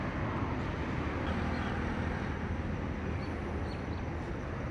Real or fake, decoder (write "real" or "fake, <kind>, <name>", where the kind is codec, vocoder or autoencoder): real